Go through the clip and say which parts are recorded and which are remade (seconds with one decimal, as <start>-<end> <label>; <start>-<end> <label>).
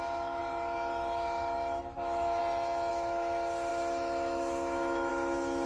0.0-2.4 remade; 2.4-2.9 recorded; 2.9-5.7 remade